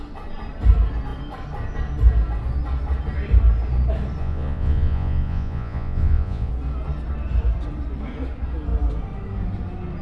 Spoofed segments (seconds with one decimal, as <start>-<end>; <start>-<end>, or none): 4.2-6.5